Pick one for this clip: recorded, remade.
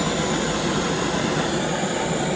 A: recorded